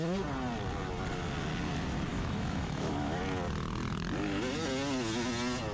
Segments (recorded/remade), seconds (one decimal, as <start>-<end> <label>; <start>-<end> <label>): 0.0-2.1 recorded; 2.1-3.2 remade; 3.2-5.7 recorded